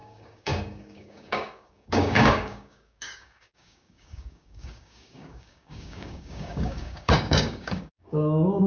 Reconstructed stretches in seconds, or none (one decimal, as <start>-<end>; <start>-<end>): 0.0-8.7